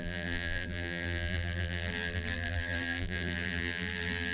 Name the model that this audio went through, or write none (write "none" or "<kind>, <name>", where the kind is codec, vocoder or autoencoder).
vocoder, BigVGAN v2